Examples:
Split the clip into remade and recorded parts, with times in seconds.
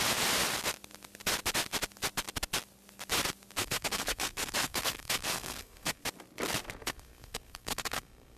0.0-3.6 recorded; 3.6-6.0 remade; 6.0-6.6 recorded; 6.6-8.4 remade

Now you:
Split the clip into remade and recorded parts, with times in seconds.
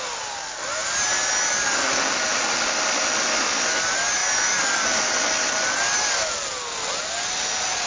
0.0-2.3 recorded; 2.3-3.4 remade; 3.4-7.9 recorded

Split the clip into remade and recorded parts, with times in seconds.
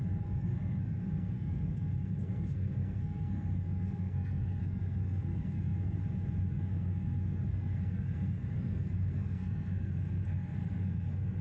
0.0-6.0 remade; 6.0-6.5 recorded; 6.5-11.4 remade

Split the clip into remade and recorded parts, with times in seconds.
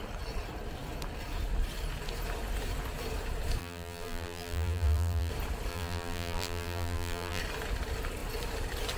0.0-3.6 recorded; 3.6-5.3 remade; 5.3-5.7 recorded; 5.7-7.4 remade; 7.4-9.0 recorded